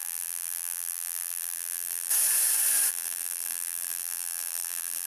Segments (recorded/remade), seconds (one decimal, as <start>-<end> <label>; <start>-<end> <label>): 0.0-2.1 remade; 2.1-2.9 recorded; 2.9-5.1 remade